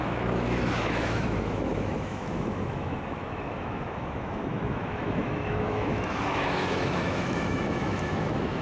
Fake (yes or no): yes